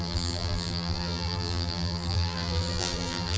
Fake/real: fake